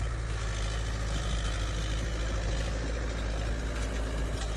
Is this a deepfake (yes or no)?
no